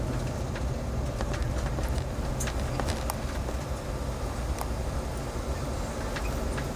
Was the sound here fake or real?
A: real